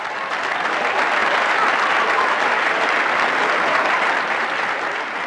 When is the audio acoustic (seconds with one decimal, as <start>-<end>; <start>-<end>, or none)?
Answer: 0.0-5.3